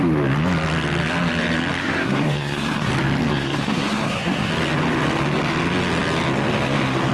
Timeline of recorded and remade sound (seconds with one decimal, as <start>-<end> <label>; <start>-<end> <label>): 0.0-1.8 recorded; 1.8-2.9 remade; 2.9-3.3 recorded; 3.3-4.5 remade; 4.5-7.1 recorded